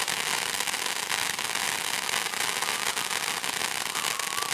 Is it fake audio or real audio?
real